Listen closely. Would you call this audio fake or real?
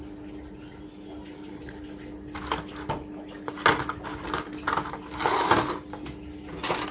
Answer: real